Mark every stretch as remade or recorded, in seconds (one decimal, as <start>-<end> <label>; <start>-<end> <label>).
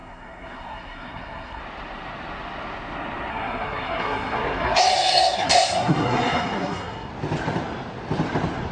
0.0-1.6 remade; 1.6-3.3 recorded; 3.3-7.1 remade; 7.1-8.7 recorded